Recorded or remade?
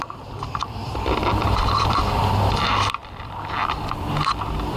remade